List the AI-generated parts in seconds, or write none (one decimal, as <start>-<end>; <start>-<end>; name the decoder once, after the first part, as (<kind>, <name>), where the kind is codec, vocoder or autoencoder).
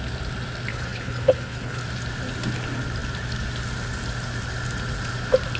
0.7-1.8 (codec, HILCodec)